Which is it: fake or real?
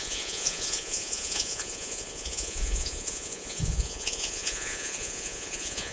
fake